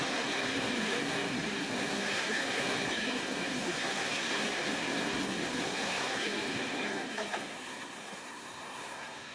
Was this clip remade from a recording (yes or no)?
yes